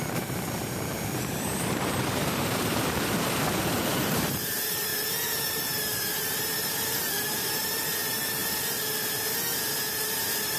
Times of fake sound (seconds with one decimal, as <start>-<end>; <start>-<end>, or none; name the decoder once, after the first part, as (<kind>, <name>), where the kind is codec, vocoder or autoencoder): 0.0-8.4 (vocoder, BigVGAN v2); 9.9-10.6